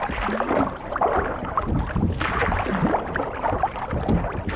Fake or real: real